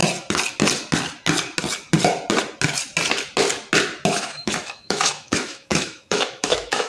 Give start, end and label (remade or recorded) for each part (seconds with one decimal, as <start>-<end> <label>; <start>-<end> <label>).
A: 0.0-4.1 recorded; 4.1-6.9 remade